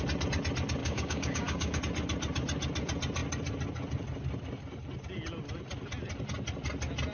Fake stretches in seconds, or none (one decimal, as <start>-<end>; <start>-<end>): 0.8-1.8